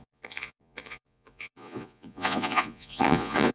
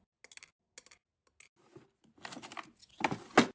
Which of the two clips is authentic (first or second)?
second